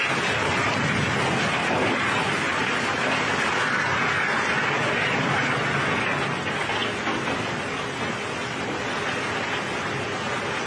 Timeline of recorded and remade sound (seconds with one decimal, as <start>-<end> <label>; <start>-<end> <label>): 0.0-10.7 recorded